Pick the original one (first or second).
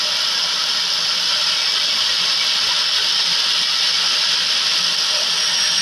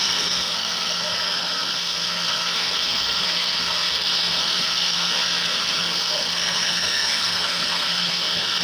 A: first